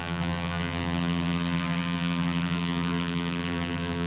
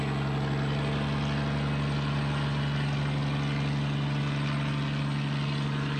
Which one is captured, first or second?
second